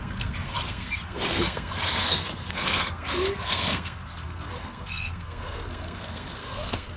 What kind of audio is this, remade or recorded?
remade